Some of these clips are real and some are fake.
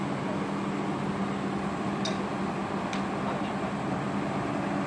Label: real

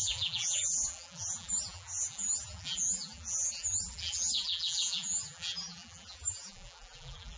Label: fake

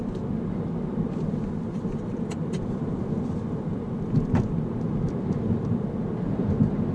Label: fake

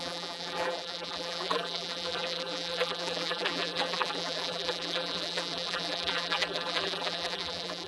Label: fake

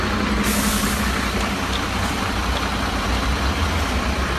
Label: real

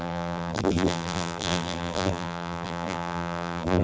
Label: fake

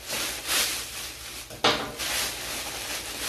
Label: real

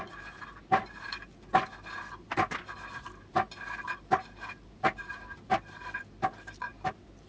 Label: fake